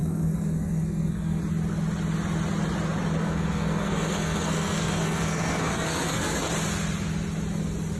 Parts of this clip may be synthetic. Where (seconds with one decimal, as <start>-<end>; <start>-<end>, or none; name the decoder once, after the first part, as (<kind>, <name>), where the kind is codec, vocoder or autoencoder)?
0.0-1.4 (codec, SNAC); 3.2-6.5